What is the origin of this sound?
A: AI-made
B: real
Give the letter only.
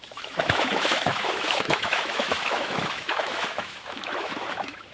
A